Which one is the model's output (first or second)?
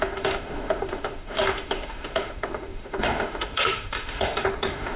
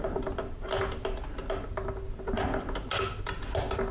first